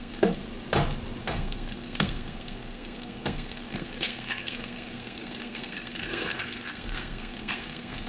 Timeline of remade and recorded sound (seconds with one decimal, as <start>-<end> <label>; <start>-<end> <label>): 0.0-0.4 remade; 0.4-1.2 recorded; 1.2-8.1 remade